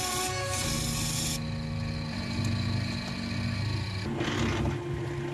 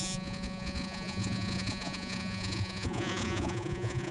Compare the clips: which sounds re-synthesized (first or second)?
second